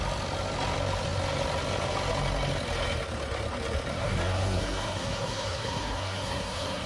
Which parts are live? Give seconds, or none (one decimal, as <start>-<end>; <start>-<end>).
0.0-3.9